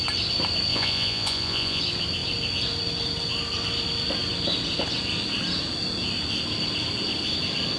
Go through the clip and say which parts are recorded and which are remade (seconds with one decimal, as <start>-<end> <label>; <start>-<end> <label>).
0.0-0.7 recorded; 0.7-1.8 remade; 1.8-7.8 recorded